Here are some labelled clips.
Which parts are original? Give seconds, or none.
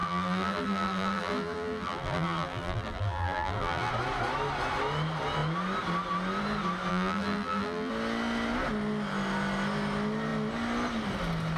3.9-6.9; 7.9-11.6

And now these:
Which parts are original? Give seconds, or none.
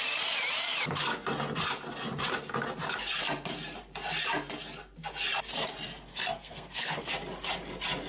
0.0-6.1; 7.1-8.1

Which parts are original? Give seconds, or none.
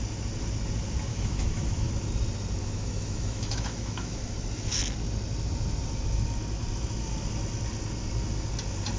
0.0-1.1; 1.9-2.6; 4.2-9.0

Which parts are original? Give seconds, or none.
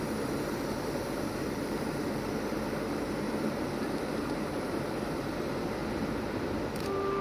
none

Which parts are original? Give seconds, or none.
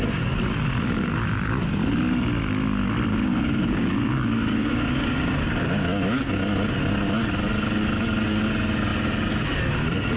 0.0-3.1; 6.3-10.2